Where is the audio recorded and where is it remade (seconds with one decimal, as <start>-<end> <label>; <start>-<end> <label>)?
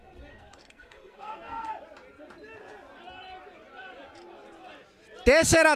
0.0-1.7 remade; 1.7-5.8 recorded